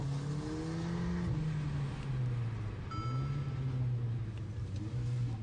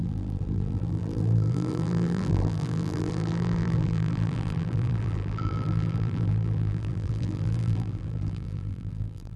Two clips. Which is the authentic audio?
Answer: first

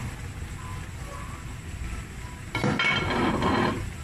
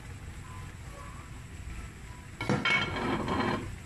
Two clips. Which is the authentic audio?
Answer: second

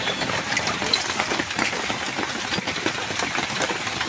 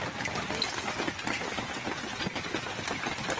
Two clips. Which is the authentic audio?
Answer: second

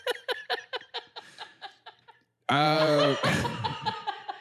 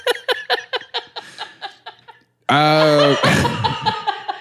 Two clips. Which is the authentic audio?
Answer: second